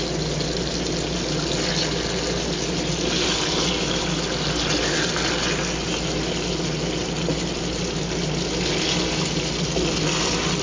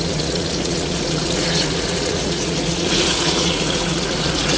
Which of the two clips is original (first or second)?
first